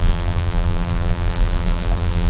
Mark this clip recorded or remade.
remade